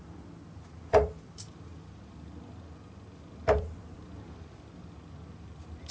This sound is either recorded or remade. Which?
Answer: recorded